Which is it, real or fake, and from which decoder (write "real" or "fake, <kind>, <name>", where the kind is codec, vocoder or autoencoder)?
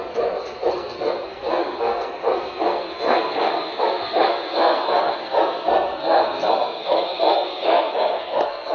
fake, codec, SNAC